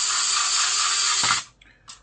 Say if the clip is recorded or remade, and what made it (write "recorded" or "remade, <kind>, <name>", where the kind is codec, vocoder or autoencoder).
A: recorded